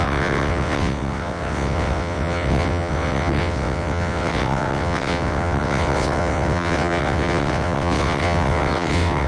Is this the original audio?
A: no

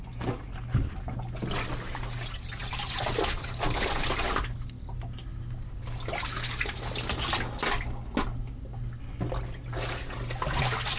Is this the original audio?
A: yes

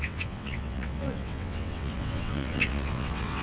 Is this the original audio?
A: no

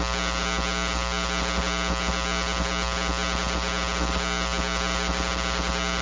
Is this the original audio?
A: yes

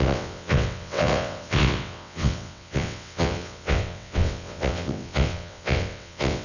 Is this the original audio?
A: no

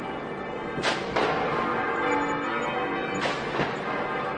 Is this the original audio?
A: yes